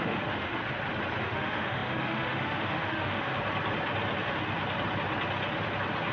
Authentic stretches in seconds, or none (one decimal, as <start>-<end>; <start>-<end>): 0.6-1.2; 3.3-6.1